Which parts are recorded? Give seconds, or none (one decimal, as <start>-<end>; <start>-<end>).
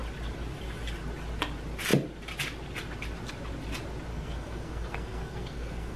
0.0-4.1